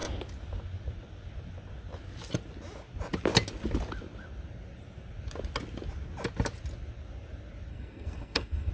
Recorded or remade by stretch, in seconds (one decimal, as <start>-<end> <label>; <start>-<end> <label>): 0.0-7.7 recorded; 7.7-8.7 remade